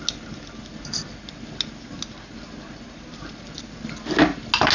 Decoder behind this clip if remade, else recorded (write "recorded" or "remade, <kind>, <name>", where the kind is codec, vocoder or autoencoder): recorded